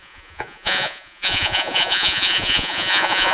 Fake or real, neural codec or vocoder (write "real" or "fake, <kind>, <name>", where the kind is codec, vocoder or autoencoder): fake, vocoder, Vocos